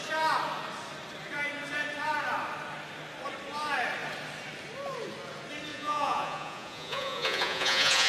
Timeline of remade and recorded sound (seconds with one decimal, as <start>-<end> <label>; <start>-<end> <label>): 0.0-5.7 recorded; 5.7-8.1 remade